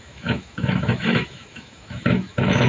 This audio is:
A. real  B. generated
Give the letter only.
B